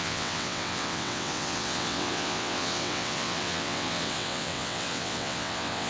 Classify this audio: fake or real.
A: fake